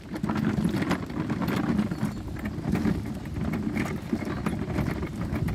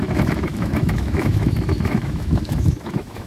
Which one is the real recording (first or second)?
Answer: first